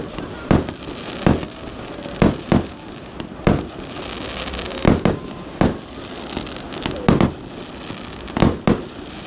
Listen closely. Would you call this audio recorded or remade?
recorded